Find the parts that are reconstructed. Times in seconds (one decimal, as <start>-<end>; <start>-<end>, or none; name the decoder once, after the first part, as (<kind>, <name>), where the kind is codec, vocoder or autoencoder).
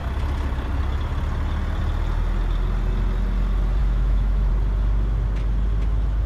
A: 3.8-4.5 (autoencoder, DAC-VAE)